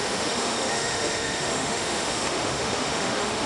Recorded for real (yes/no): no